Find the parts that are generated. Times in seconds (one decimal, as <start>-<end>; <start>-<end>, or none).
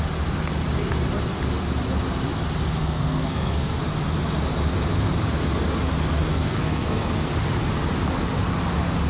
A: 2.8-3.8; 6.3-7.3